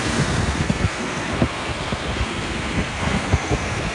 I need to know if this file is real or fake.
fake